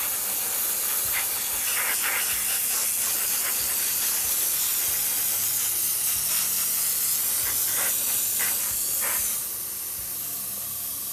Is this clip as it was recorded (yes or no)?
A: yes